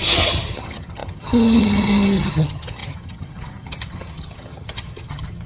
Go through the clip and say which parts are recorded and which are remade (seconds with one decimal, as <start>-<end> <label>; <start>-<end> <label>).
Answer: 0.0-5.5 remade